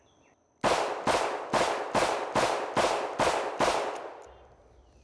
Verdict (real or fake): real